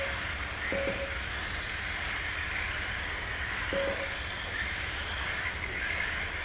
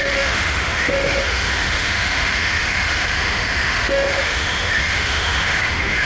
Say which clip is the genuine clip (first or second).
first